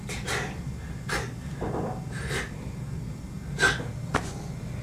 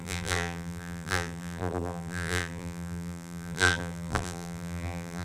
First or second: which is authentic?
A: first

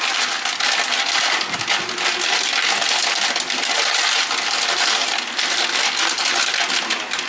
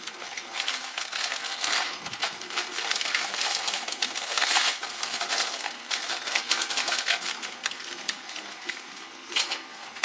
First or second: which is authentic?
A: first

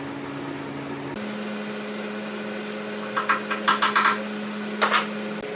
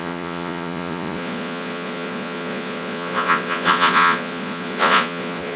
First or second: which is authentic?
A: first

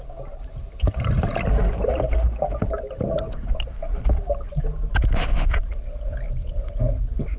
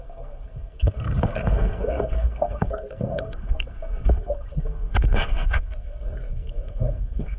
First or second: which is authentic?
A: first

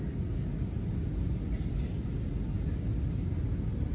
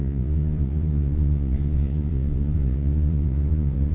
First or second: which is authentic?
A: first